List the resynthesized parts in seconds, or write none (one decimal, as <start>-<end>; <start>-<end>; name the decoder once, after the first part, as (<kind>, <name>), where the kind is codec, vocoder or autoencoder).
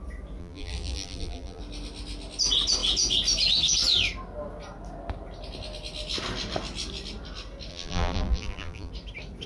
0.4-1.6 (vocoder, BigVGAN v2); 7.7-8.9